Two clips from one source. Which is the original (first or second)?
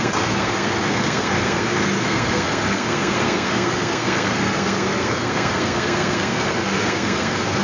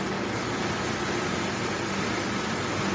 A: second